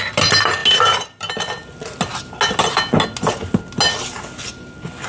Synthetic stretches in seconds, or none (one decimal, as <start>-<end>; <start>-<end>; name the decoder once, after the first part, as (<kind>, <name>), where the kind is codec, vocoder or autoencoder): none